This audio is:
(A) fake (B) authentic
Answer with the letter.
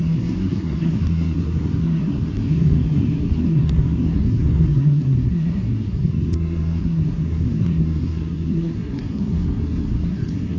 A